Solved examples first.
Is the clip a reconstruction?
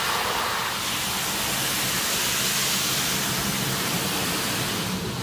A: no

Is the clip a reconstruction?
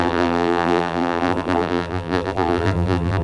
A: yes